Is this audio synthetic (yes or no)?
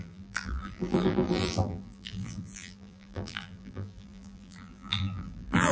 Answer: yes